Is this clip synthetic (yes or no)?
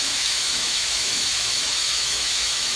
yes